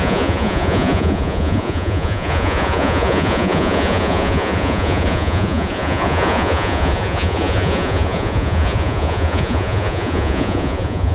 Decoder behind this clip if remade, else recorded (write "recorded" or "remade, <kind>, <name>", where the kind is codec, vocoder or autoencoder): remade, vocoder, Vocos